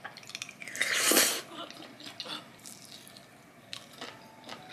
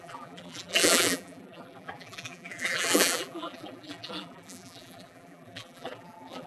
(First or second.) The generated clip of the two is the second